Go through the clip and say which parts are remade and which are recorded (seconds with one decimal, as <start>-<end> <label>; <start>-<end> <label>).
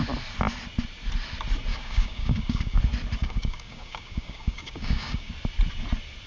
0.0-1.7 recorded; 1.7-2.8 remade; 2.8-3.2 recorded; 3.2-5.3 remade; 5.3-6.3 recorded